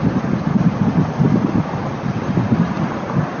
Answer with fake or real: real